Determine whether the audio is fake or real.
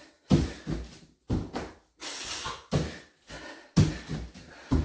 real